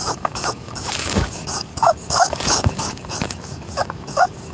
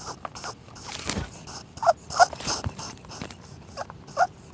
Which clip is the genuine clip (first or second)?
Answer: second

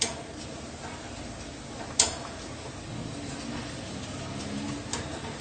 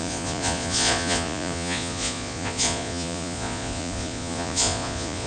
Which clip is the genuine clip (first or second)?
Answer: first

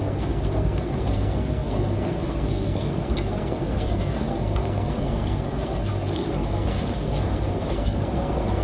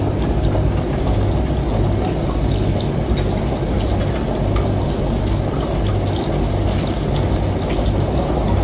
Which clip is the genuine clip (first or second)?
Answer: second